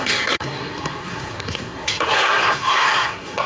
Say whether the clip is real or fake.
fake